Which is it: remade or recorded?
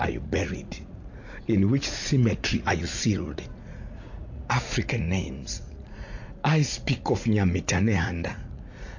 remade